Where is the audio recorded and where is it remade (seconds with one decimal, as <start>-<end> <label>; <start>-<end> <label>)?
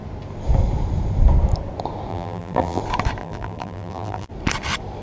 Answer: 0.0-2.1 recorded; 2.1-2.8 remade; 2.8-3.2 recorded; 3.2-4.3 remade; 4.3-5.0 recorded